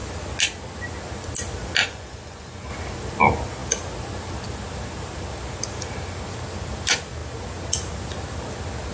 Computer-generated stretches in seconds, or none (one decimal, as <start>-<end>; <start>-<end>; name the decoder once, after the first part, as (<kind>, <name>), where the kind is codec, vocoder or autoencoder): 1.8-2.7 (vocoder, Vocos)